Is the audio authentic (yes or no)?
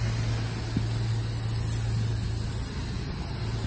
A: yes